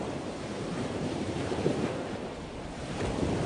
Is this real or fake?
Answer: fake